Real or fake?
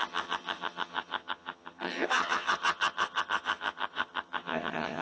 fake